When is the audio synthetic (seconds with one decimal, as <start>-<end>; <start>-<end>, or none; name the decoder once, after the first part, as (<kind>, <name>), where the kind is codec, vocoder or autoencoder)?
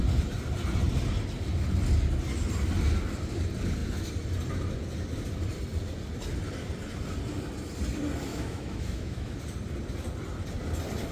8.3-9.4 (autoencoder, DAC-VAE)